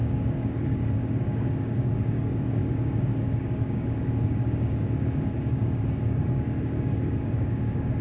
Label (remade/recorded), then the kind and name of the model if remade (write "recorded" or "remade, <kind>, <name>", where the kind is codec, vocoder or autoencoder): remade, codec, DAC